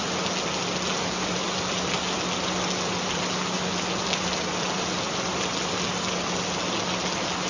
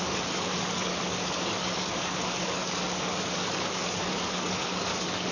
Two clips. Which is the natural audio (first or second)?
first